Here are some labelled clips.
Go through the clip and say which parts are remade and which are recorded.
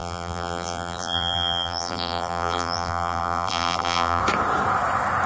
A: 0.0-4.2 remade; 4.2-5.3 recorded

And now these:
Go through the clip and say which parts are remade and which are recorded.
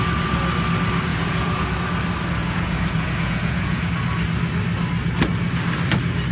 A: 0.0-1.1 recorded; 1.1-1.7 remade; 1.7-2.4 recorded; 2.4-3.9 remade; 3.9-6.3 recorded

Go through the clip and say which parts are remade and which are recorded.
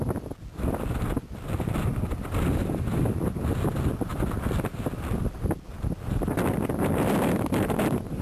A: 0.0-8.2 recorded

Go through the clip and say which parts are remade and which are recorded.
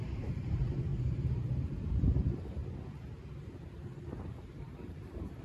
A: 0.0-2.6 remade; 2.6-4.0 recorded; 4.0-5.4 remade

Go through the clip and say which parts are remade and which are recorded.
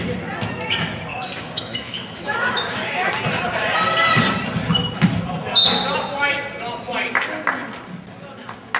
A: 0.0-1.1 recorded; 1.1-3.1 remade; 3.1-8.8 recorded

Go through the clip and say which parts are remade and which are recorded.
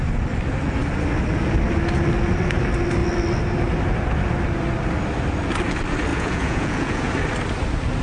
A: 0.0-6.1 recorded; 6.1-7.1 remade; 7.1-8.0 recorded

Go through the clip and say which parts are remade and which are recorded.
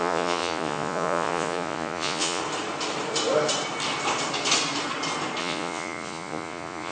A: 0.0-2.4 remade; 2.4-5.4 recorded; 5.4-6.9 remade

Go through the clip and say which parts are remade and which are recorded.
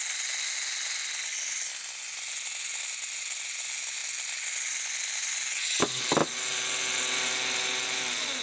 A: 0.0-8.4 recorded